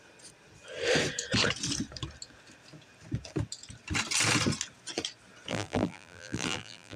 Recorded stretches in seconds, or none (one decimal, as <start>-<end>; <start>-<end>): 0.0-5.5